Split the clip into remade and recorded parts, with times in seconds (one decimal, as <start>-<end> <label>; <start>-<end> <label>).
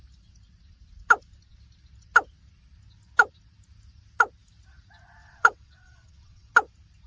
0.0-5.2 recorded; 5.2-6.5 remade; 6.5-7.1 recorded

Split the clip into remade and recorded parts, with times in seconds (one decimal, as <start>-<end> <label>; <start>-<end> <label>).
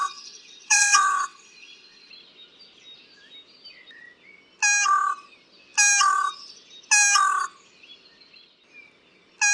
0.0-2.1 remade; 2.1-9.5 recorded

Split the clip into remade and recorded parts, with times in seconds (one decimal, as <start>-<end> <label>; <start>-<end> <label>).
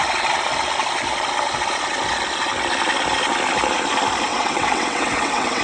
0.0-4.3 recorded; 4.3-5.6 remade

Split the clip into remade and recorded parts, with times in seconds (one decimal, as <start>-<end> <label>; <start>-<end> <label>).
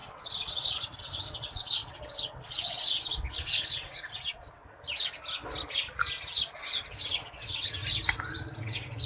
0.0-4.6 remade; 4.6-6.6 recorded; 6.6-7.8 remade; 7.8-8.6 recorded; 8.6-9.1 remade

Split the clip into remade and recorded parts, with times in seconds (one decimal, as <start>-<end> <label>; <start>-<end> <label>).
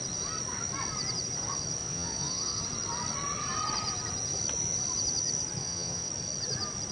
0.0-1.8 recorded; 1.8-2.6 remade; 2.6-5.6 recorded; 5.6-6.1 remade; 6.1-6.9 recorded